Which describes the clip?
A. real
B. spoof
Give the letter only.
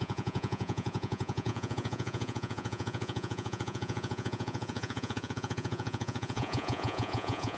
B